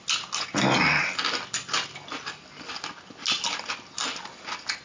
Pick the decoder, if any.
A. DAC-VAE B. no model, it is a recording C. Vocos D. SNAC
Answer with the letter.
B